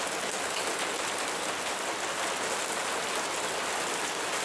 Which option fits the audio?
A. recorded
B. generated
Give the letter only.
A